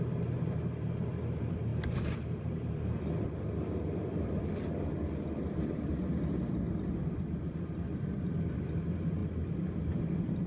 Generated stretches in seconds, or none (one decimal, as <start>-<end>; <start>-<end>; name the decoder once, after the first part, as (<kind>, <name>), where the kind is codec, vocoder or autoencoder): 0.0-5.9 (vocoder, BigVGAN v2); 6.5-9.2; 9.7-10.5